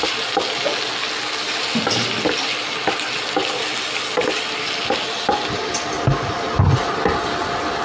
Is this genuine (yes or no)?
yes